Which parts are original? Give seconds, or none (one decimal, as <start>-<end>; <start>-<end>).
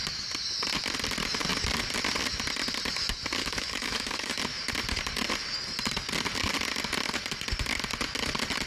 0.0-3.4; 4.4-8.7